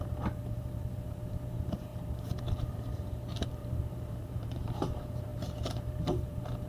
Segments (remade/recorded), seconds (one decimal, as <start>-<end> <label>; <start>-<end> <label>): 0.0-6.7 remade